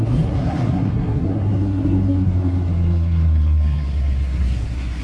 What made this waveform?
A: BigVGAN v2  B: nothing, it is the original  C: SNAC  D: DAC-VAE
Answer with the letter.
C